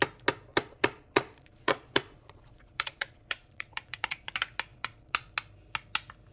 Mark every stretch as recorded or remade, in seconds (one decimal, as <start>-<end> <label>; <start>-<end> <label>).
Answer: 0.0-0.5 recorded; 0.5-4.3 remade; 4.3-4.7 recorded; 4.7-5.3 remade; 5.3-6.3 recorded